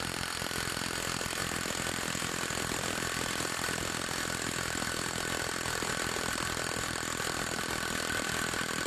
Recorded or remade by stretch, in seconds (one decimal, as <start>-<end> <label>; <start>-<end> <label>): 0.0-1.4 recorded; 1.4-5.9 remade; 5.9-8.9 recorded